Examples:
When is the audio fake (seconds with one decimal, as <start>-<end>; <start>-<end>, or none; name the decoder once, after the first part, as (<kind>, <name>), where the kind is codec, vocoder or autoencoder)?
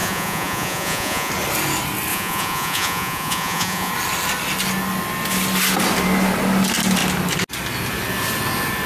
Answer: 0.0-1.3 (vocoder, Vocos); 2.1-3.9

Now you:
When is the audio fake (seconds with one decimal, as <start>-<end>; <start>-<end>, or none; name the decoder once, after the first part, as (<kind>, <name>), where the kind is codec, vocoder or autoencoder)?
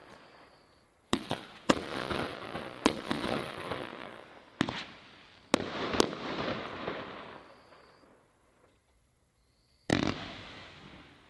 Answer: 0.0-4.3 (vocoder, Vocos); 7.5-9.9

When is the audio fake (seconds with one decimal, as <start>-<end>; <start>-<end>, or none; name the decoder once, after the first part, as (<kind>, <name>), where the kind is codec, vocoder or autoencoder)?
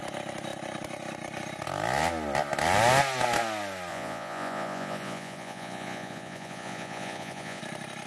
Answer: 3.9-7.6 (vocoder, Vocos)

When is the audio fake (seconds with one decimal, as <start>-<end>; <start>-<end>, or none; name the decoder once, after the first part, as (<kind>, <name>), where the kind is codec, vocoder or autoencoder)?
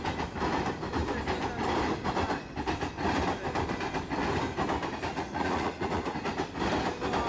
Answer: 5.1-6.3 (vocoder, Vocos)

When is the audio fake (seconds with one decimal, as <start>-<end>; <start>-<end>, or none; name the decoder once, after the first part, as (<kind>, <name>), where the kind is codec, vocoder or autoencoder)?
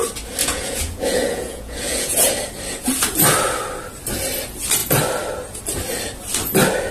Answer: 0.4-2.3 (vocoder, Vocos)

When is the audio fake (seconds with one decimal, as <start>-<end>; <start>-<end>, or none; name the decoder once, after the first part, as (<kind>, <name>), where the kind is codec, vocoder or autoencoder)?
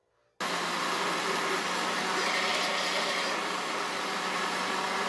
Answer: none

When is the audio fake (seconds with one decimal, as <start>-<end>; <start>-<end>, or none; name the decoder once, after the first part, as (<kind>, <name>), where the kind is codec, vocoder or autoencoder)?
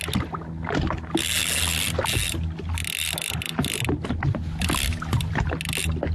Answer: none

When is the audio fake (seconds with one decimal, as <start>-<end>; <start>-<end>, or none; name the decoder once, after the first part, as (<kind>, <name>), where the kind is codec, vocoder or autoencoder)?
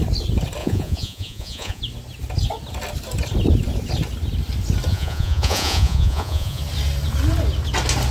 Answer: 0.6-1.8 (vocoder, Vocos); 4.9-6.6